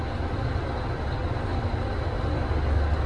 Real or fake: real